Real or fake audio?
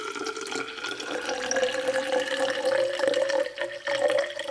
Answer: real